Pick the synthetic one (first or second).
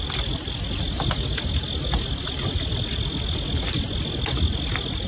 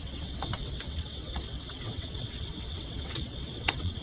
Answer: second